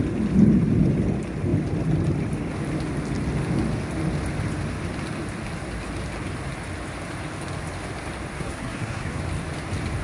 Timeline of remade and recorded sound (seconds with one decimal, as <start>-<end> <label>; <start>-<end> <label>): 0.0-8.3 recorded; 8.3-9.2 remade; 9.2-10.0 recorded